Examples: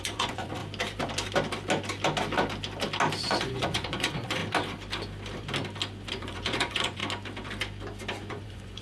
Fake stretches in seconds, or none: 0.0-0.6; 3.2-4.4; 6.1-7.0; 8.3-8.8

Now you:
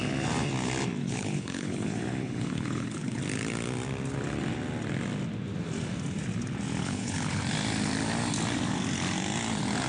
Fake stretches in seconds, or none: 1.0-3.2; 6.8-7.4